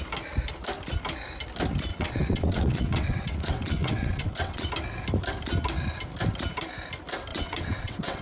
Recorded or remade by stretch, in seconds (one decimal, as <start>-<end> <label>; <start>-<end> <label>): 0.0-1.9 recorded; 1.9-4.7 remade; 4.7-7.3 recorded; 7.3-8.2 remade